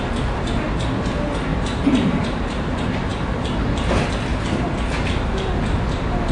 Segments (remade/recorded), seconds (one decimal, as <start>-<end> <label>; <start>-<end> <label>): 0.0-1.5 recorded; 1.5-2.7 remade; 2.7-6.3 recorded